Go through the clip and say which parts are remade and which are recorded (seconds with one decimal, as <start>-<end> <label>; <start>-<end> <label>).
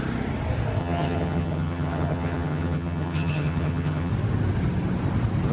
0.0-0.8 recorded; 0.8-4.1 remade; 4.1-5.5 recorded